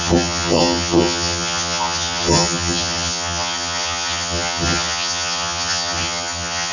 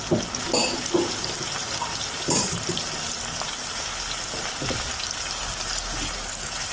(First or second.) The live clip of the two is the second